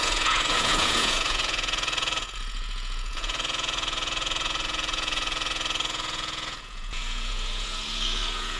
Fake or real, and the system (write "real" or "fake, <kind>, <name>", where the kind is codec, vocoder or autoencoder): fake, vocoder, Vocos